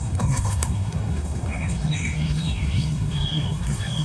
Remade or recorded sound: remade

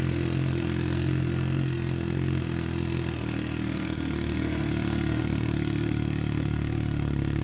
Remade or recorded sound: remade